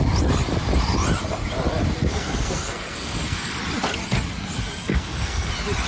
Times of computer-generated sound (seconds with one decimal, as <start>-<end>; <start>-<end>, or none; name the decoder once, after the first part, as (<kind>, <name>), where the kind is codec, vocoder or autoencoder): 2.1-3.6 (codec, SNAC); 4.9-5.5